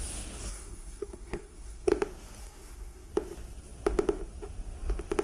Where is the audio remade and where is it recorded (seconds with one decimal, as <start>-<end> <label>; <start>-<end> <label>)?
0.0-0.5 recorded; 0.5-1.9 remade; 1.9-2.4 recorded; 2.4-3.1 remade; 3.1-5.2 recorded